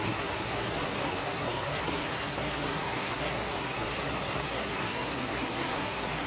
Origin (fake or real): fake